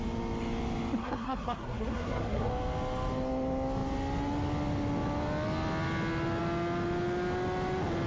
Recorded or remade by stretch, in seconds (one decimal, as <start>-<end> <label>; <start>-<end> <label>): 0.0-1.0 recorded; 1.0-2.5 remade; 2.5-8.1 recorded